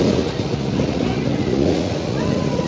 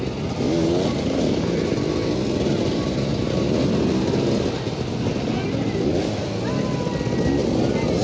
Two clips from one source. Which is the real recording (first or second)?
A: second